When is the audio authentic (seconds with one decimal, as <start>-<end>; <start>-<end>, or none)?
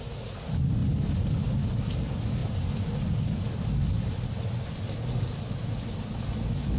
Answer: 0.0-6.8